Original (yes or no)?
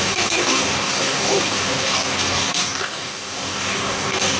no